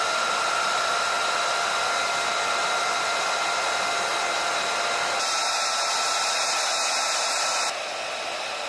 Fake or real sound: real